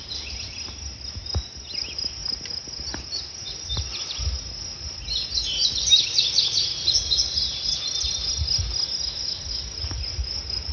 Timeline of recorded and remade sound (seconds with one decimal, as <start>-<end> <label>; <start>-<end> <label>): 0.0-10.7 recorded